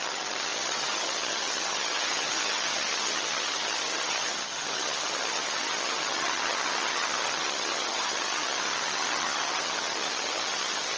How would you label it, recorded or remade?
remade